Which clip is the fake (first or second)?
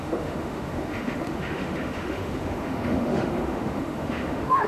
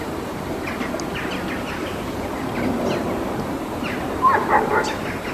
first